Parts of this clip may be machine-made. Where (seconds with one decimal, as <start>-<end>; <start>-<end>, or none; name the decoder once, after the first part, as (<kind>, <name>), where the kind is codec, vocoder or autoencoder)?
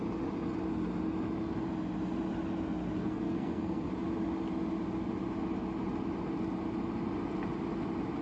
3.0-3.9 (codec, SNAC)